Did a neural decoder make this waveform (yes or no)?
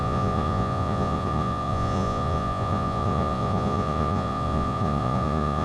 yes